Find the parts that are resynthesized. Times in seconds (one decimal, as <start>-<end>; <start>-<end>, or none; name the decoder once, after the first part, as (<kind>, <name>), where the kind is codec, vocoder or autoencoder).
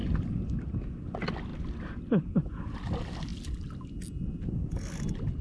0.0-0.7 (vocoder, BigVGAN v2); 1.5-2.5